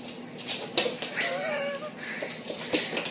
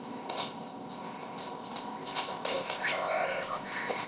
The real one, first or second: first